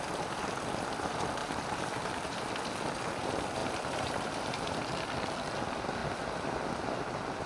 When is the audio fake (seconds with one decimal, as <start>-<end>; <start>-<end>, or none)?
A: 1.4-2.5; 3.6-5.1